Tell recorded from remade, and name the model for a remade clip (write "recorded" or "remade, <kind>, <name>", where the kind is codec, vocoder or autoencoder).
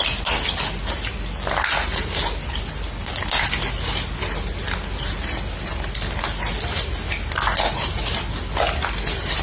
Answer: recorded